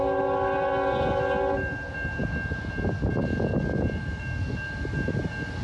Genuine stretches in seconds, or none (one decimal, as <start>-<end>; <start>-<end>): 0.0-5.6